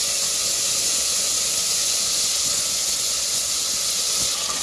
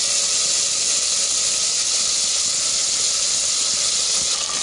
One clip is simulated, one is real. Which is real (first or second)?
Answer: second